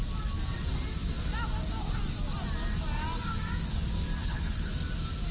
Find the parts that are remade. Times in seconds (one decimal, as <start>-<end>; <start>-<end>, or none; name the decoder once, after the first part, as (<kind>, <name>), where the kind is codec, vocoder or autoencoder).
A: 4.2-4.7 (codec, HILCodec)